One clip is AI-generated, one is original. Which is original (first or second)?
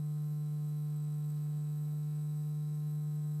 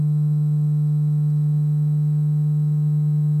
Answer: second